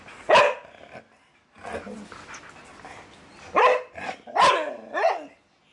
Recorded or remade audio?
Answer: recorded